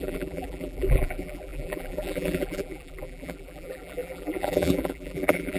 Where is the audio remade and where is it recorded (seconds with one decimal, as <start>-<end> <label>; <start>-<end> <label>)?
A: 0.0-5.6 remade